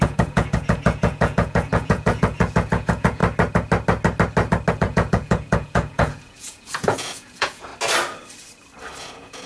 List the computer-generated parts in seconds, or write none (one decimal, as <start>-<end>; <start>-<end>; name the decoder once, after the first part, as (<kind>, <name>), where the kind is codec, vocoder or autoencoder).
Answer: 0.0-3.2 (vocoder, Vocos); 4.7-7.7; 9.0-9.5